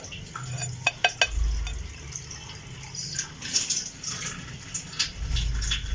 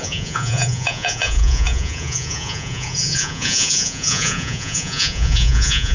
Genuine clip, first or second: first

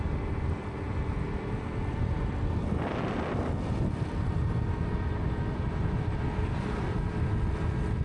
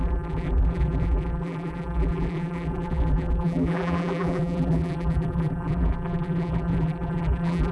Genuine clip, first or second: first